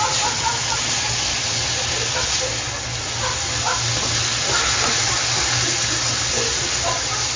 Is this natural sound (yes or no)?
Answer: yes